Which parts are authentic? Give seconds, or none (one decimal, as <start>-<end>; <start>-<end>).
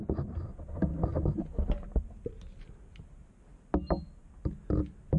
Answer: 0.0-5.2